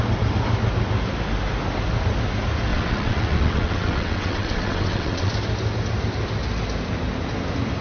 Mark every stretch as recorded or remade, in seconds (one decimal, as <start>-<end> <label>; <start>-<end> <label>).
0.0-2.7 recorded; 2.7-5.3 remade; 5.3-7.8 recorded